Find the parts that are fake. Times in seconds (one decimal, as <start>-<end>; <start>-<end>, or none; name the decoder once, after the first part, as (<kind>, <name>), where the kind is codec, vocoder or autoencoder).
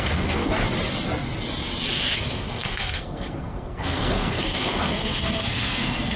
0.0-0.6 (codec, SNAC); 1.9-6.2